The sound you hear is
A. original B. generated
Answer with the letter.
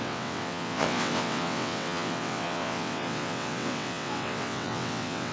B